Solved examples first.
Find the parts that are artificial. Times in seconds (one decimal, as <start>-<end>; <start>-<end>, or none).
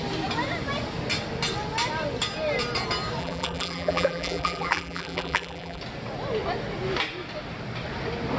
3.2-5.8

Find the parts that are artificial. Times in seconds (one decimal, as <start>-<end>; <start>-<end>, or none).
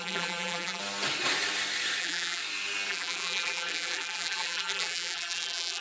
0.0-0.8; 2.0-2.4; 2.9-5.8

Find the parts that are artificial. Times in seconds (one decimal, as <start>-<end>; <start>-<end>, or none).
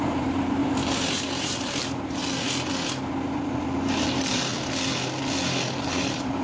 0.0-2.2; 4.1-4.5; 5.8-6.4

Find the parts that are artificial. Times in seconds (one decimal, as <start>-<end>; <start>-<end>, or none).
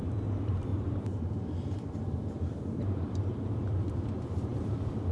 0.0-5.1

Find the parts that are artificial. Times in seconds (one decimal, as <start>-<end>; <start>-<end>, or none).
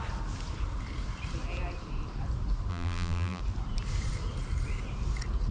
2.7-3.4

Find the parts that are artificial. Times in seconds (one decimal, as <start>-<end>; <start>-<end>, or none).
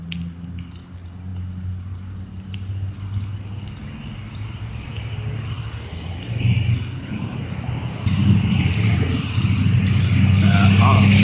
1.3-2.7; 3.8-6.2